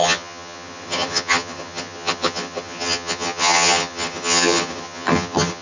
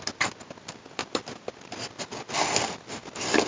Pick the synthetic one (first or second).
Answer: first